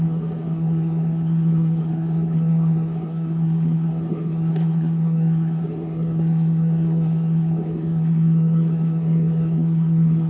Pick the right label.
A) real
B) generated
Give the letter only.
B